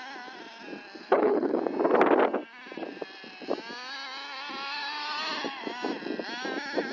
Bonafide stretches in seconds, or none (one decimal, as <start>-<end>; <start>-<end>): 0.0-1.0; 1.6-6.9